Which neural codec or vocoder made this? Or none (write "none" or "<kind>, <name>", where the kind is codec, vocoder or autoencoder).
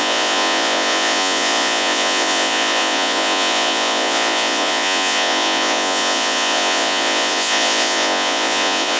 vocoder, Vocos